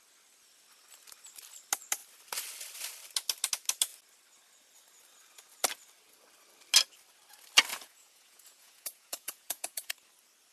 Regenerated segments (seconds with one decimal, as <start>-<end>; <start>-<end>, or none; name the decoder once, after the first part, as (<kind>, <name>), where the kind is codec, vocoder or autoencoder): 7.7-9.9 (vocoder, Vocos)